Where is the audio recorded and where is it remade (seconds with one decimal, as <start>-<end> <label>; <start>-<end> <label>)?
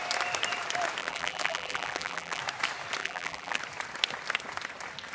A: 0.0-1.0 recorded; 1.0-2.4 remade; 2.4-3.0 recorded; 3.0-3.6 remade; 3.6-5.1 recorded